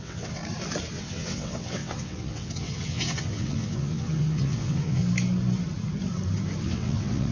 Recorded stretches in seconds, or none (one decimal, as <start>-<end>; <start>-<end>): 0.4-0.9; 5.0-6.6